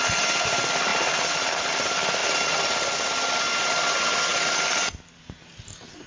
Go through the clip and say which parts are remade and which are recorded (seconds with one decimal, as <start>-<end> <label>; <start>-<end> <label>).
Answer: 0.0-0.9 recorded; 0.9-1.7 remade; 1.7-2.2 recorded; 2.2-3.5 remade; 3.5-4.3 recorded; 4.3-5.5 remade; 5.5-6.1 recorded